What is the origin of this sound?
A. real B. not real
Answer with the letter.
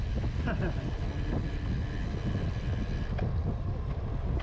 A